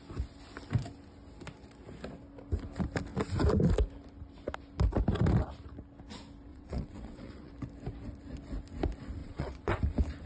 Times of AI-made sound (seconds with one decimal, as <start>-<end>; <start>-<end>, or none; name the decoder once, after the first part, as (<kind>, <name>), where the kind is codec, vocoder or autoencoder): 6.5-7.5 (vocoder, WaveNeXt); 9.2-9.8